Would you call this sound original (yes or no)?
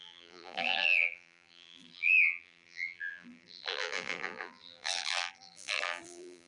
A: no